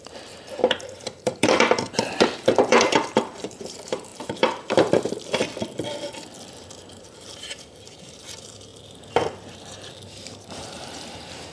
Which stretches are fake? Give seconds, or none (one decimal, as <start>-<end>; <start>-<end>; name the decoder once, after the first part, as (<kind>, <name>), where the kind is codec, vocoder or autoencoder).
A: 0.0-5.4 (vocoder, BigVGAN v2); 6.9-11.5